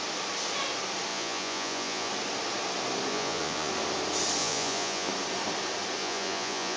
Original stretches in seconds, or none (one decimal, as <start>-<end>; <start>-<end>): 0.0-1.1; 2.1-3.1; 3.7-4.4; 5.1-6.0